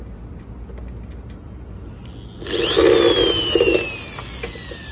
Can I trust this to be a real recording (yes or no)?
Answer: yes